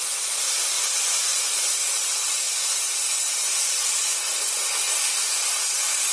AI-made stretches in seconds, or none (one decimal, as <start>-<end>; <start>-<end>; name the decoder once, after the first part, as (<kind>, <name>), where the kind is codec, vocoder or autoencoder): none